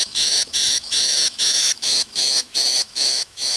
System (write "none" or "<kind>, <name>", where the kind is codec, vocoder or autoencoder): autoencoder, DAC-VAE